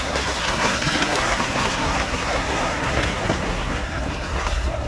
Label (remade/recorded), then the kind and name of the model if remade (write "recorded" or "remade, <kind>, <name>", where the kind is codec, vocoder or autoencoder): remade, codec, SNAC